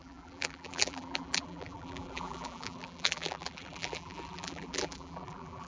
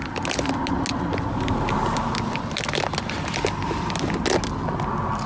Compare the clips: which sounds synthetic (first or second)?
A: first